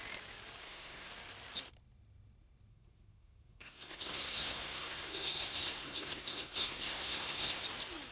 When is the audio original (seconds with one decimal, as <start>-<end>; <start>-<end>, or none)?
0.0-0.6; 1.1-2.7; 7.6-8.1